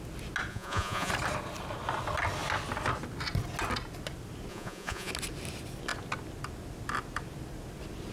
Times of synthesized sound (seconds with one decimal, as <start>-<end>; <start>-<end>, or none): 0.5-1.1; 4.5-5.1